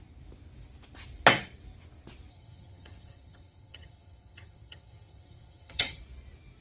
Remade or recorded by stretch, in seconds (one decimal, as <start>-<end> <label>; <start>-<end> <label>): 0.0-2.3 recorded; 2.3-6.0 remade; 6.0-6.6 recorded